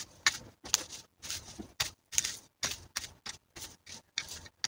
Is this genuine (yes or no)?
yes